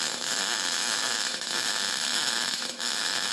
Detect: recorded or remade remade